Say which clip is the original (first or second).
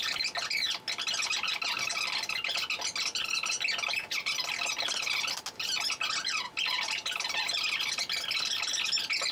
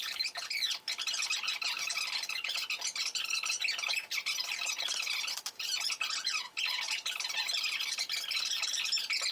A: first